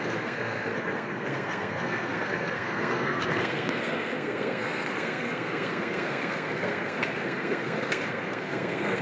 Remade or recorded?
remade